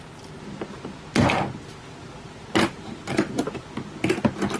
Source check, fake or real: real